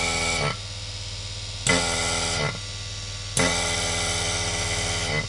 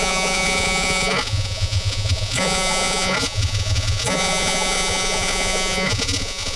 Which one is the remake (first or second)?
second